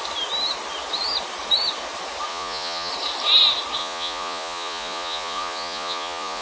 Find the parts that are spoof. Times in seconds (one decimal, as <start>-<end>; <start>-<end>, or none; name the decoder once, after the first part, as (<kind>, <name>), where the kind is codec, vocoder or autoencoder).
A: 2.3-2.9 (vocoder, Vocos); 3.8-6.4